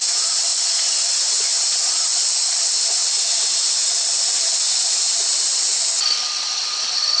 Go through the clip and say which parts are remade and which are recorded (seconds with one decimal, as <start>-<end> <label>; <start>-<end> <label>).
0.0-0.5 recorded; 0.5-1.6 remade; 1.6-7.2 recorded